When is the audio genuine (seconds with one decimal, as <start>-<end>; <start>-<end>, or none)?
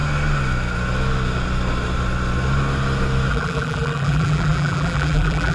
0.0-3.3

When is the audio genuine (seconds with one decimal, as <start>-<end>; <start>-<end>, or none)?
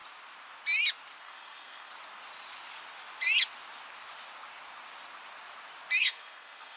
0.0-1.2; 1.9-6.0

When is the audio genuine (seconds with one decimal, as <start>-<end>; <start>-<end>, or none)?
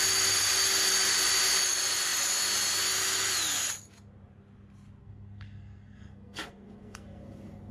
0.0-5.0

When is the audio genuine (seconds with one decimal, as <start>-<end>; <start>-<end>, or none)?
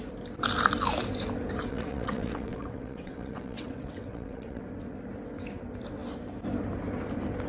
0.0-1.7; 4.6-7.5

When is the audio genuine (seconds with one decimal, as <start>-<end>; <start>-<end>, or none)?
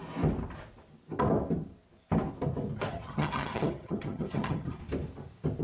0.0-2.9; 4.8-5.6